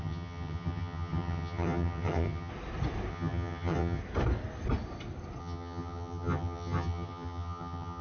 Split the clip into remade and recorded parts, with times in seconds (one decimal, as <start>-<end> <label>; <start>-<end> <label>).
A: 0.0-2.5 remade; 2.5-3.1 recorded; 3.1-4.0 remade; 4.0-5.4 recorded; 5.4-8.0 remade